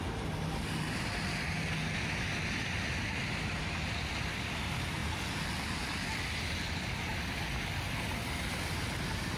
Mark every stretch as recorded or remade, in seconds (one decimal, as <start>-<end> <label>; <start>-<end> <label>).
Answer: 0.0-9.4 recorded